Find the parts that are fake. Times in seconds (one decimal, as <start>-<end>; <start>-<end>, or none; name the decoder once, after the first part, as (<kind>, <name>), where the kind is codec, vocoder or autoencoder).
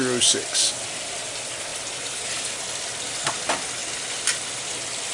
none